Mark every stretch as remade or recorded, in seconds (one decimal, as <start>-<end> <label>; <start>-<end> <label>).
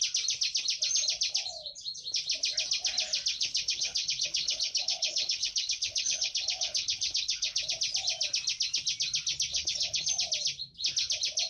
0.0-3.3 recorded; 3.3-7.7 remade; 7.7-9.5 recorded; 9.5-10.1 remade; 10.1-11.5 recorded